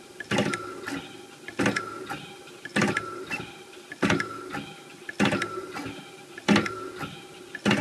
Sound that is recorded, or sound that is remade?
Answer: recorded